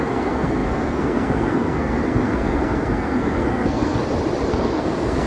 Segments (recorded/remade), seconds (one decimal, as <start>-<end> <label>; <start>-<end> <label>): 0.0-4.0 remade; 4.0-4.5 recorded; 4.5-5.3 remade